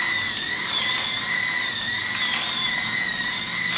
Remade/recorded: recorded